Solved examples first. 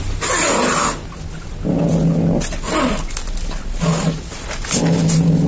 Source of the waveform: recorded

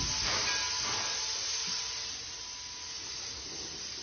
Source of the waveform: recorded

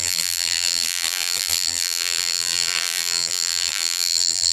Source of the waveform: remade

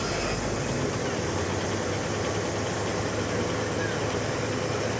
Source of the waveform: recorded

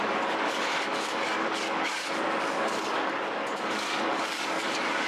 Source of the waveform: remade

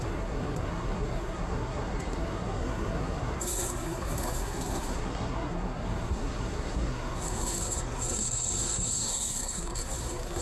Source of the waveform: remade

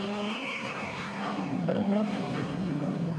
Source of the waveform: remade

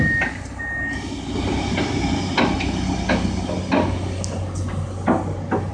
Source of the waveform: recorded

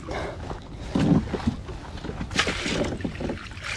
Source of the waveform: recorded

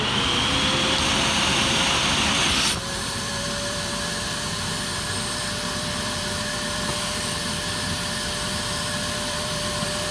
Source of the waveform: remade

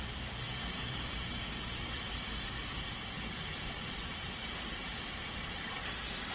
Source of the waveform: remade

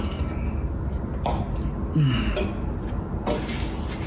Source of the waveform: recorded